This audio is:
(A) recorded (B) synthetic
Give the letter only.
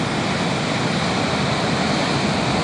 A